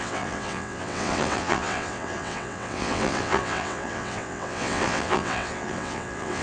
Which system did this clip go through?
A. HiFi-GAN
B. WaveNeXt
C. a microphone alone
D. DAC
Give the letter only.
B